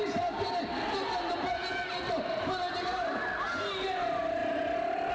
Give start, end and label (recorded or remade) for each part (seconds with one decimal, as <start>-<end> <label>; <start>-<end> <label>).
0.0-5.1 recorded